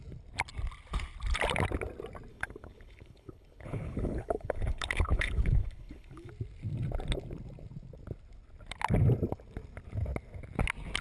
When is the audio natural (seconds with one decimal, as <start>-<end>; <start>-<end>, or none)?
0.0-2.3; 6.3-11.0